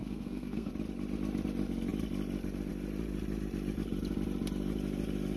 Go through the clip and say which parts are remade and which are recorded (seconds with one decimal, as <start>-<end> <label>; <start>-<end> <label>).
0.0-0.7 remade; 0.7-5.4 recorded